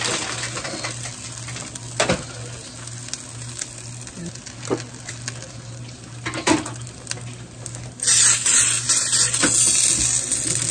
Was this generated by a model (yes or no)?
no